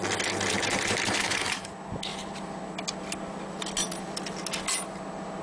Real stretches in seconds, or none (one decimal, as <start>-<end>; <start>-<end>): 0.0-1.2; 1.7-5.4